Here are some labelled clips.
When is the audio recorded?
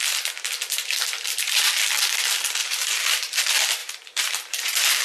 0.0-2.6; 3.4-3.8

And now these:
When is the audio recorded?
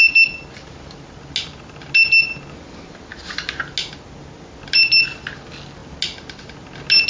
0.0-7.1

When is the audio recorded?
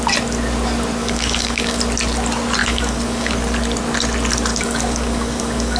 0.0-1.0; 1.8-2.6; 3.3-4.5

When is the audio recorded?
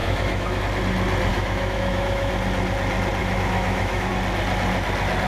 0.6-1.3; 2.3-3.2; 4.1-5.3